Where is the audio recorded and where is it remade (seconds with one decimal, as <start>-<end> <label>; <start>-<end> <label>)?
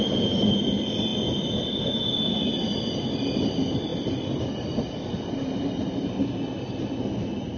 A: 0.0-3.9 recorded; 3.9-5.3 remade; 5.3-7.6 recorded